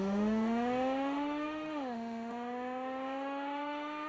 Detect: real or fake fake